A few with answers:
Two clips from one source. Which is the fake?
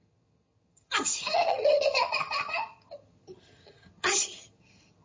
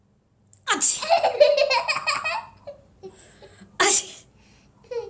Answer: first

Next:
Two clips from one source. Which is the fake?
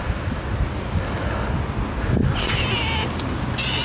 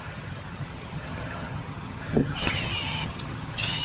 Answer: second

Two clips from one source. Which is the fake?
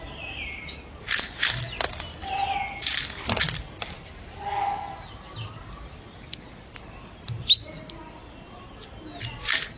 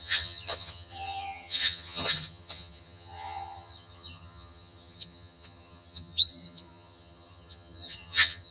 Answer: second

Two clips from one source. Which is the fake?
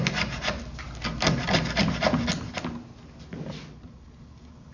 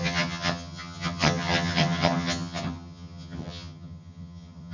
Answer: second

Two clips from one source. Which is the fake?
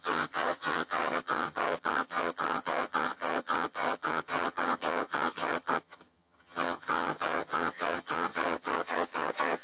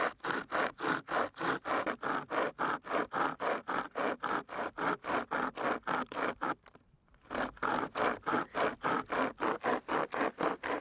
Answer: first